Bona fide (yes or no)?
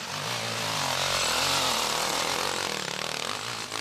yes